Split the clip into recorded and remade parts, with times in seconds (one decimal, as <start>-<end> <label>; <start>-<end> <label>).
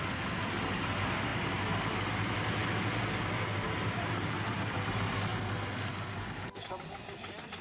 0.0-7.6 recorded